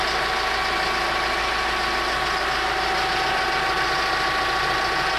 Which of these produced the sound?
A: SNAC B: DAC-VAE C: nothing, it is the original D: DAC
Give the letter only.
C